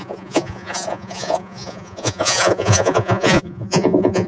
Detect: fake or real fake